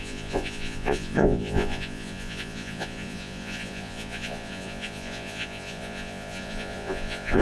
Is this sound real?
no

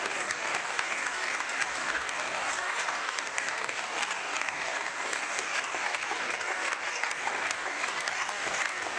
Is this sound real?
no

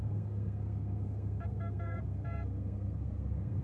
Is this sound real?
no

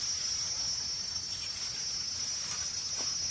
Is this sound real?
yes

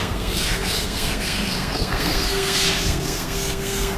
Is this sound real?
no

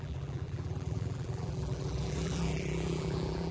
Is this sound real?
no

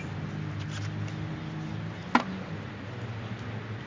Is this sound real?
yes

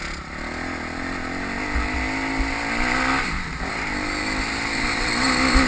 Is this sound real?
yes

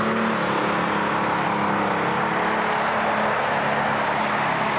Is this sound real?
yes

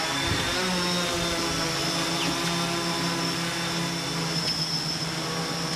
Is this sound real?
yes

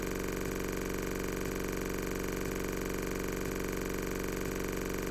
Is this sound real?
yes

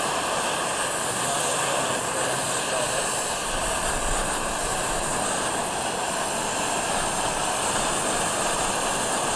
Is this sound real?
yes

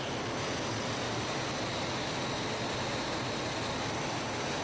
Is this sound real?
yes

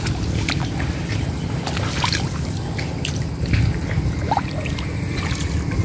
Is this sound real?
yes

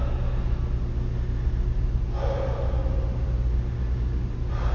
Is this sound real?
yes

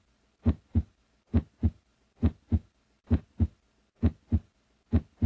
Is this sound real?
yes